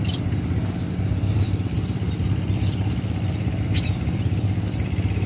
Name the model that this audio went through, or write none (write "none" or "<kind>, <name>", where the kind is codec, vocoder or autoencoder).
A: vocoder, BigVGAN v2